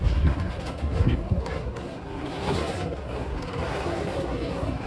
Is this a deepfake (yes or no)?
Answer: yes